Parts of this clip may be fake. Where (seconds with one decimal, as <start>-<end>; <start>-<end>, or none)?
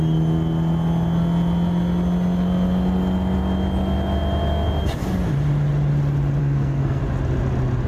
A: 6.4-7.0